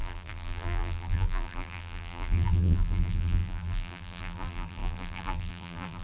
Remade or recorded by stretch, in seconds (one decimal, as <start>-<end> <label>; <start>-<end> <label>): 0.0-6.0 remade